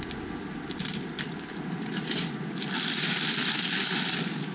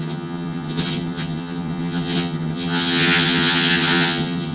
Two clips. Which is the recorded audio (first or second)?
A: first